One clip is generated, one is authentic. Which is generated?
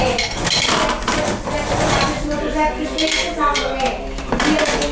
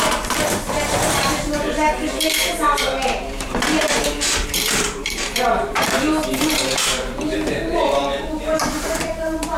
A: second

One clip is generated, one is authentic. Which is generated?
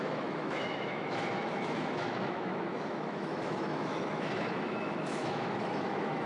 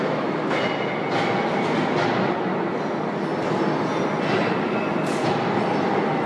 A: first